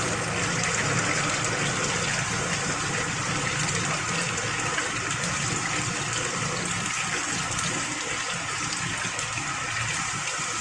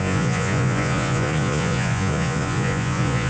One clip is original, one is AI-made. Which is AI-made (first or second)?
second